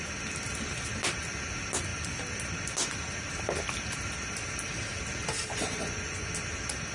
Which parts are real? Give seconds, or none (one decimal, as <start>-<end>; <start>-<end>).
0.0-5.5; 6.3-6.9